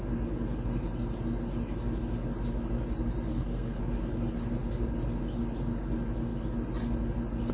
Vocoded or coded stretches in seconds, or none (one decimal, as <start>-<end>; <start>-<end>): 3.3-3.8